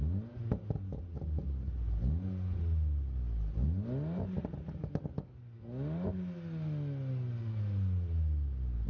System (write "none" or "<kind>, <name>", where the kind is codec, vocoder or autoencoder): none